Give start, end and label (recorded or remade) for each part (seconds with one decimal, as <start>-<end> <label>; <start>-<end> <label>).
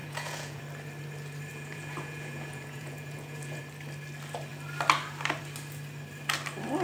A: 0.0-0.6 remade; 0.6-1.5 recorded; 1.5-3.6 remade; 3.6-6.8 recorded